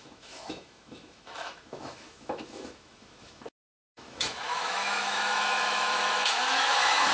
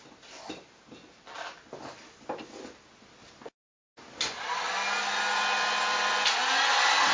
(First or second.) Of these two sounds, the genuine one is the second